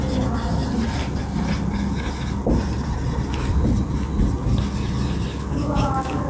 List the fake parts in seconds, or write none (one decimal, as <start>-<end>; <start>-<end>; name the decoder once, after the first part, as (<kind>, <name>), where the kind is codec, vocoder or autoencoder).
5.3-6.3 (codec, DAC)